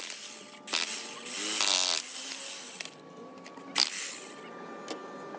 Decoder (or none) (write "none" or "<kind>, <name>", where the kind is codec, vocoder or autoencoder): none